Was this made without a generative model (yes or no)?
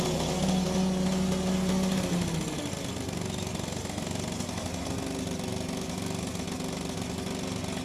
yes